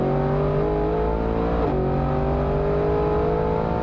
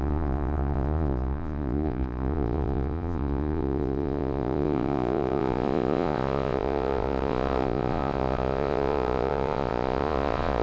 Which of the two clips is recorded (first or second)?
first